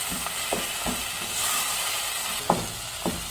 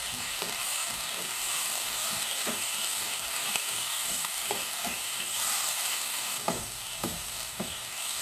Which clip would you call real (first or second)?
first